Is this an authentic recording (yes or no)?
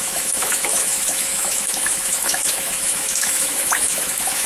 no